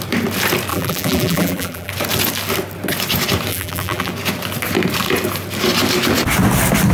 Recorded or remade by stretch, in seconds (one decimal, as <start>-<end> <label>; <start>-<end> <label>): 0.0-0.7 recorded; 0.7-1.9 remade; 1.9-3.5 recorded; 3.5-4.1 remade; 4.1-6.9 recorded